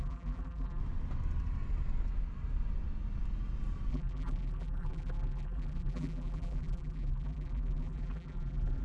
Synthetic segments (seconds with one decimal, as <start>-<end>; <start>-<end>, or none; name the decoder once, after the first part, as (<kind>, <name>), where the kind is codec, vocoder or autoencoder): 0.0-0.8 (vocoder, BigVGAN v2); 3.9-8.8